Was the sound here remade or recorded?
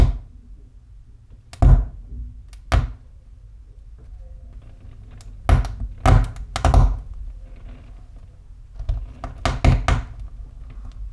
recorded